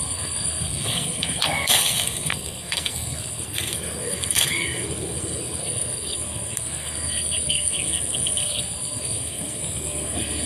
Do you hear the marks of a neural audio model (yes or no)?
yes